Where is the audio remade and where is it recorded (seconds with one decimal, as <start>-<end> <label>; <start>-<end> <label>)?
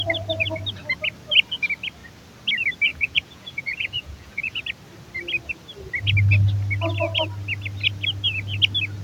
0.0-2.9 recorded; 2.9-4.6 remade; 4.6-9.0 recorded